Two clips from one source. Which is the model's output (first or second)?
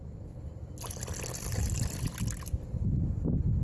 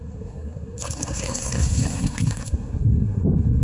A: second